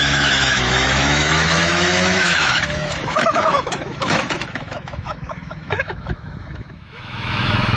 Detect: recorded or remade remade